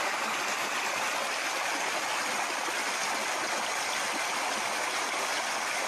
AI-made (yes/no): no